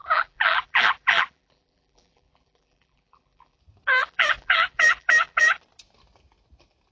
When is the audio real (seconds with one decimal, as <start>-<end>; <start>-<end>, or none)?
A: 3.6-4.0; 5.6-6.9